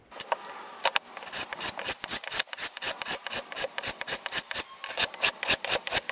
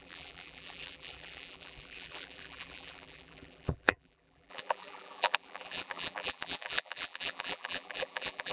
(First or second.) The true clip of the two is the first